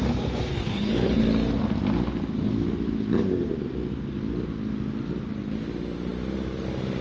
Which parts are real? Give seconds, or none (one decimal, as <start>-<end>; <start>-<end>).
0.0-0.5; 1.2-7.0